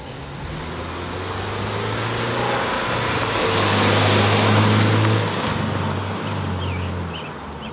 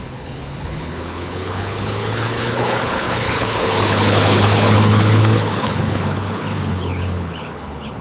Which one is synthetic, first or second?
second